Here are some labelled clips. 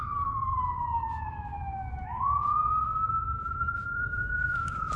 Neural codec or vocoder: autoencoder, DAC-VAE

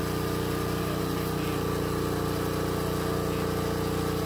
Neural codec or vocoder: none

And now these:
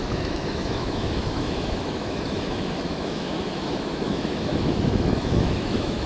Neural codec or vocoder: autoencoder, DAC-VAE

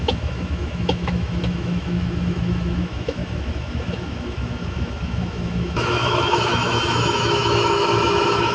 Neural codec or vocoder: autoencoder, DAC-VAE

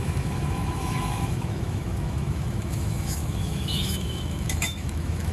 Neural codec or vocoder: autoencoder, DAC-VAE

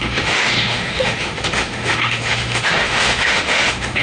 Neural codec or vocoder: autoencoder, DAC-VAE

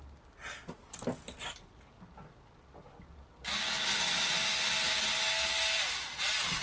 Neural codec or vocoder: none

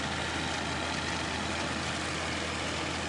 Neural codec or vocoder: none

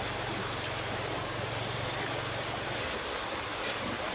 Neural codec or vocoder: none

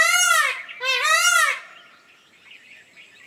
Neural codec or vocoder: none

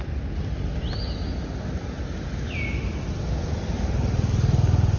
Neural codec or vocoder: none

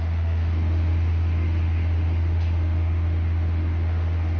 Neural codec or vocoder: autoencoder, DAC-VAE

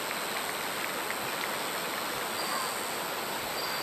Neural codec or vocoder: none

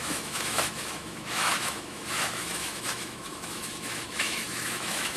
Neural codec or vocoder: autoencoder, DAC-VAE